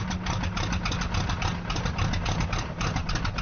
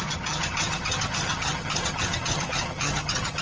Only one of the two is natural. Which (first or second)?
first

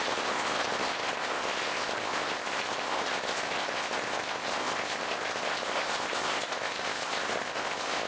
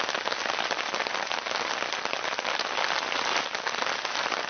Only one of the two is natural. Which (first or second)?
second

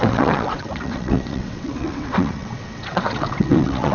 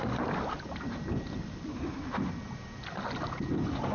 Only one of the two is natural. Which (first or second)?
second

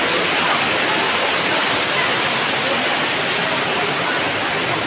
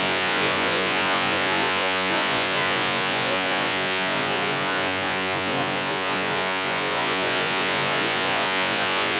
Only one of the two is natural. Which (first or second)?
first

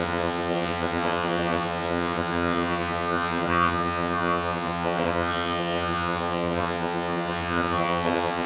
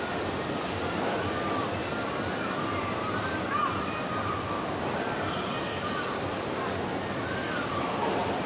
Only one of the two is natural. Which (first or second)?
second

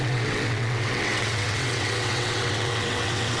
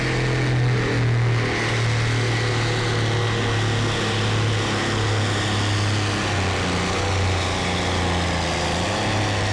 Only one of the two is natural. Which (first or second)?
second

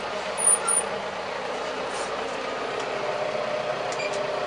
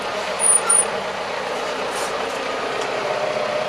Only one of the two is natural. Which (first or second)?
first